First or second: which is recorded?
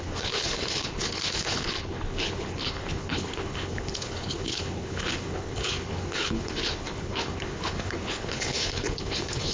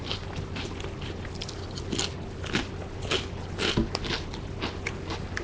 second